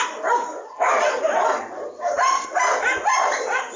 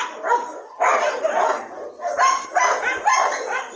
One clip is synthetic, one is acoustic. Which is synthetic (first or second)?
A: first